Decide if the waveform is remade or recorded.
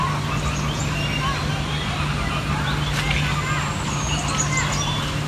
recorded